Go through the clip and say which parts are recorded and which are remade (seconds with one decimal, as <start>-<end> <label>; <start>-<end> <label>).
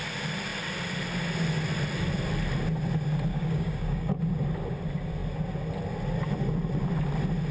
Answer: 0.0-3.3 recorded; 3.3-4.2 remade; 4.2-7.5 recorded